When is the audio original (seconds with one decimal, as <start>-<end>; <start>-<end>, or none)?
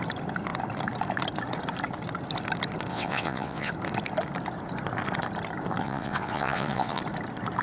0.0-2.9; 3.7-5.8; 7.0-7.6